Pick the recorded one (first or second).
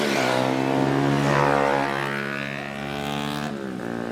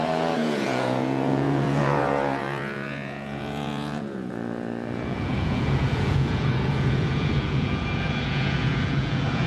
first